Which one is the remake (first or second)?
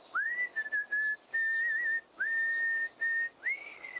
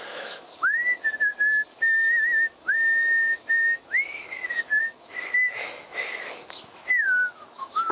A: second